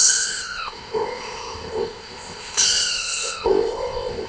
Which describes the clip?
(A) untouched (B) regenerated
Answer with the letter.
B